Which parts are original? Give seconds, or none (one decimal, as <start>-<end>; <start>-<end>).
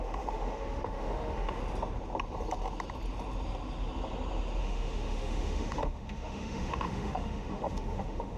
1.6-4.6